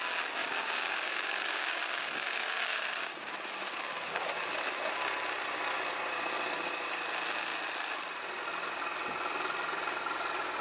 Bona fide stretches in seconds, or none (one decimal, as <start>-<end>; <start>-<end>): 0.0-0.4; 4.2-10.6